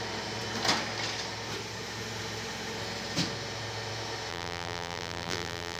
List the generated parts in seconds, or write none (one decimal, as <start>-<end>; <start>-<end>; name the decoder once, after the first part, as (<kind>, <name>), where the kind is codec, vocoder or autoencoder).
4.3-5.8 (vocoder, BigVGAN v2)